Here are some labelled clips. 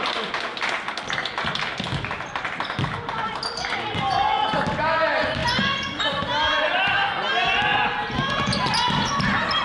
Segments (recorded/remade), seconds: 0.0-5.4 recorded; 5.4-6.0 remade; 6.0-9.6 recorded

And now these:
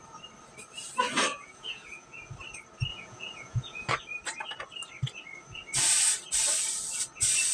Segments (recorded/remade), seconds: 0.0-1.3 recorded; 1.3-2.3 remade; 2.3-2.9 recorded; 2.9-3.9 remade; 3.9-7.5 recorded